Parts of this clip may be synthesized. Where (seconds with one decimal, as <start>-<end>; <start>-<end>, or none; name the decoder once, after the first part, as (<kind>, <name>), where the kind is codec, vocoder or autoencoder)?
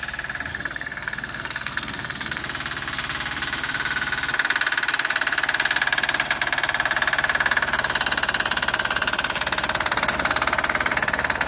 0.5-2.4 (codec, SNAC)